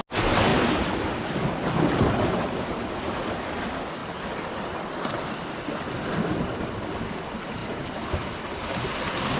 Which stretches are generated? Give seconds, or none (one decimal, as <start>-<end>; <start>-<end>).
7.6-8.9